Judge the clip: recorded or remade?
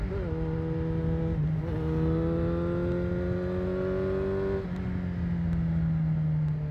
recorded